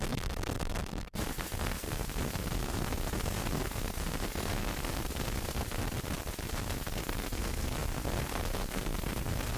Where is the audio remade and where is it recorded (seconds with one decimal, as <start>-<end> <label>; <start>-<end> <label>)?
0.0-5.8 remade; 5.8-6.5 recorded; 6.5-9.6 remade